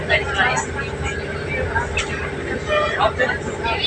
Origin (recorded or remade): recorded